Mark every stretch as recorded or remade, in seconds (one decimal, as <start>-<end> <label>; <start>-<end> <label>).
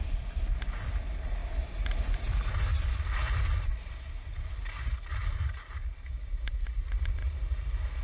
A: 0.0-7.2 recorded; 7.2-8.0 remade